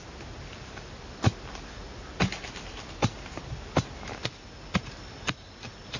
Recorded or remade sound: recorded